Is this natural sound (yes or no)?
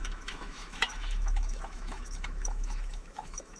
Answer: no